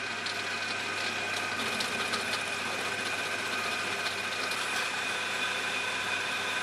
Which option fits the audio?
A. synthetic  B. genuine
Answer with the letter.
B